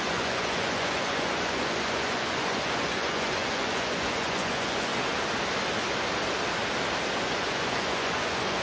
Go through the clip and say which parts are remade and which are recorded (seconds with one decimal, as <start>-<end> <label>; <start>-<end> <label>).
0.0-4.9 remade; 4.9-7.2 recorded; 7.2-8.6 remade